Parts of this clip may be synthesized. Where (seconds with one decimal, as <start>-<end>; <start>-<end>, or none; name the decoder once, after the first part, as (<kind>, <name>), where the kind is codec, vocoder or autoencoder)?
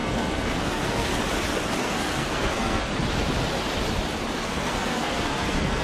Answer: 0.0-1.1 (codec, SNAC); 1.8-2.9; 4.4-5.8